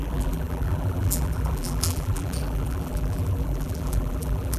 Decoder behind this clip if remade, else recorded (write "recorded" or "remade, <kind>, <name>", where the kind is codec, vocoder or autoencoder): remade, vocoder, BigVGAN v2